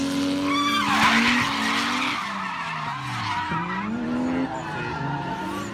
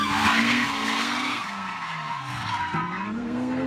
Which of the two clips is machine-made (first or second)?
second